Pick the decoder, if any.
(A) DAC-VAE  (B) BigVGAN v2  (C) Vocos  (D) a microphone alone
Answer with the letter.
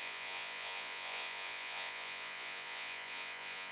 C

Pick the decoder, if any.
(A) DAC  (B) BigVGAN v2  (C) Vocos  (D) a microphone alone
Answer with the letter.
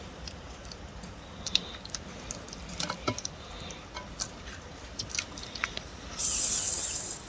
D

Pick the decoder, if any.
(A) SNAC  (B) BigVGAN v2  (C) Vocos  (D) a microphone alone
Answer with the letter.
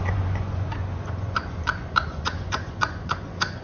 C